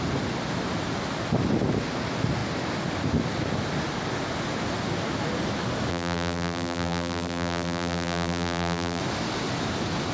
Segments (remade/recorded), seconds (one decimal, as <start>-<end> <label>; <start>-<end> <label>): 0.0-5.9 recorded; 5.9-9.0 remade; 9.0-10.1 recorded